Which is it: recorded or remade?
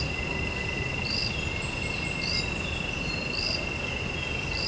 recorded